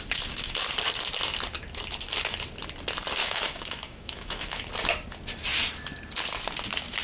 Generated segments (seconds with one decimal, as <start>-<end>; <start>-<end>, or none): 3.2-4.7